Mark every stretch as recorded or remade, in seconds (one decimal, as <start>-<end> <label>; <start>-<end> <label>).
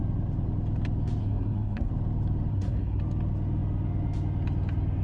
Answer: 0.0-1.2 recorded; 1.2-1.9 remade; 1.9-2.5 recorded; 2.5-3.0 remade; 3.0-5.0 recorded